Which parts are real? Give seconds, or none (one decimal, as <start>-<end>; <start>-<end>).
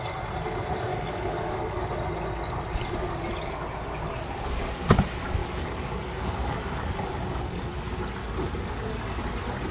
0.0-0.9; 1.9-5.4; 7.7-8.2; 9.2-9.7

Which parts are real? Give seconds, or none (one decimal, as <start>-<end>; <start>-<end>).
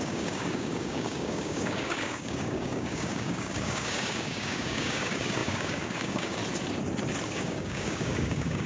6.4-7.3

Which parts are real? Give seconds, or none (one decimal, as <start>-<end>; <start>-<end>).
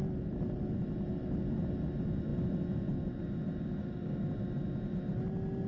0.0-3.8; 4.3-5.7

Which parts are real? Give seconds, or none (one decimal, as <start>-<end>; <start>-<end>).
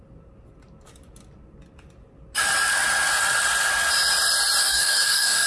0.0-4.6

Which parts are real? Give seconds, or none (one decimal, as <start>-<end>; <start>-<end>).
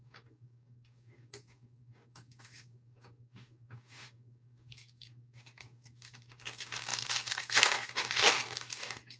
none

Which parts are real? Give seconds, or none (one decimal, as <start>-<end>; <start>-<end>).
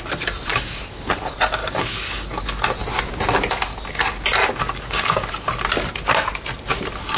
0.0-0.5; 1.1-1.6; 2.4-4.4; 5.3-7.2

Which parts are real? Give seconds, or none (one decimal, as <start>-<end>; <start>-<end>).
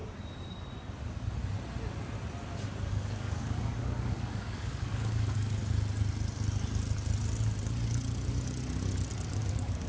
0.0-2.9; 5.6-9.3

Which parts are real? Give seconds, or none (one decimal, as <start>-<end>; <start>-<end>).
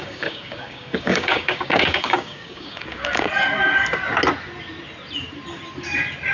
3.3-6.3